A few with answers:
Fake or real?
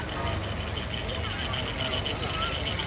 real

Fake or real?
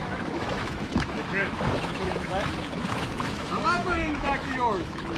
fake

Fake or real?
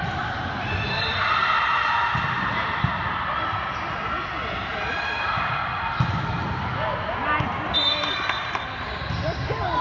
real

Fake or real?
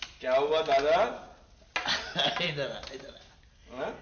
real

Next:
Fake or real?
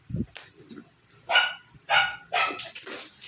real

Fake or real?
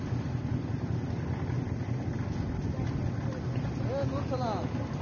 real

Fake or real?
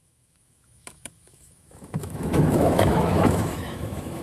fake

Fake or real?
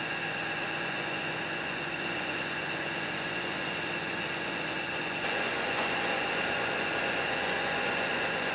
fake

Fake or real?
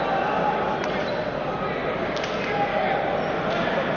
real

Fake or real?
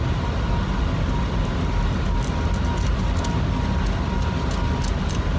real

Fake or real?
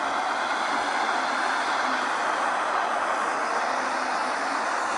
real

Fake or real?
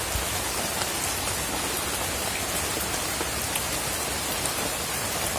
real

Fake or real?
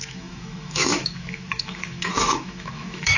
fake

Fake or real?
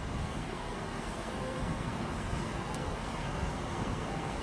fake